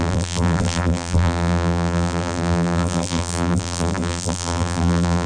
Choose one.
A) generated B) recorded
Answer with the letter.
A